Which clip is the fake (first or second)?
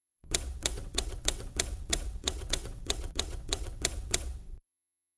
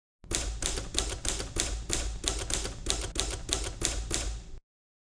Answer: first